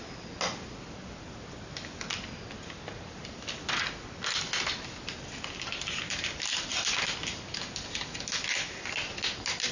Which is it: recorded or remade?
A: recorded